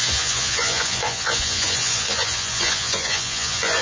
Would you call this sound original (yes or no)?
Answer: no